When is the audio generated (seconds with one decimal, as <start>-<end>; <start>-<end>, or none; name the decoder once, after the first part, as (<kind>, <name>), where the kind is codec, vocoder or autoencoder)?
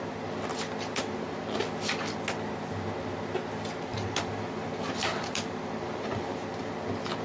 3.9-6.2 (vocoder, BigVGAN v2)